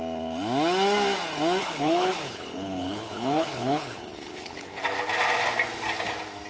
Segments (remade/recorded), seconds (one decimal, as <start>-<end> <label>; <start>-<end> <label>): 0.0-1.6 recorded; 1.6-4.8 remade; 4.8-6.5 recorded